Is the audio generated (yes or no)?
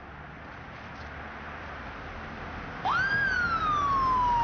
no